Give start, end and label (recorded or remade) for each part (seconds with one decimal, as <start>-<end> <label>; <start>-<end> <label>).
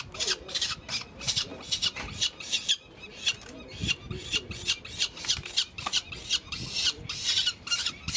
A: 0.0-1.5 remade; 1.5-5.7 recorded; 5.7-8.2 remade